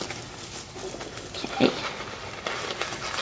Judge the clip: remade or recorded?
recorded